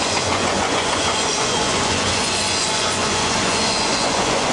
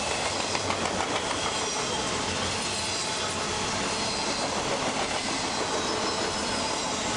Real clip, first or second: second